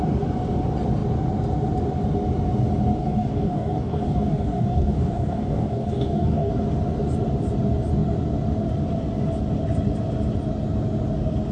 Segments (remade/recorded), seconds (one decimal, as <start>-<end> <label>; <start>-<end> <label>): 0.0-3.0 recorded; 3.0-6.5 remade; 6.5-11.5 recorded